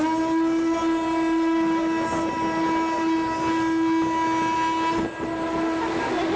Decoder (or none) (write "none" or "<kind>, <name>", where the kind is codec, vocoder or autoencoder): none